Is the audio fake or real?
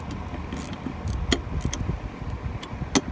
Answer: real